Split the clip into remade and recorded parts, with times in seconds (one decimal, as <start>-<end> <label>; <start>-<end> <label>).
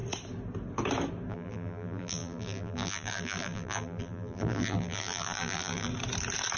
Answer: 0.0-1.3 recorded; 1.3-5.9 remade; 5.9-6.6 recorded